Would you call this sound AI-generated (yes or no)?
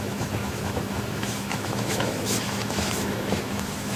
yes